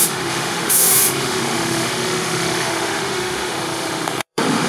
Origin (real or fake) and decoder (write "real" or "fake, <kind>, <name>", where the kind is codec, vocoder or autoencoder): fake, autoencoder, DAC-VAE